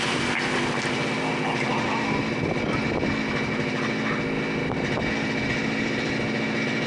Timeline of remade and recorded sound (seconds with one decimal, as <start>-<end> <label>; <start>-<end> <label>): 0.0-6.9 recorded